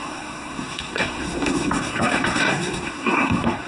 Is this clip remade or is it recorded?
remade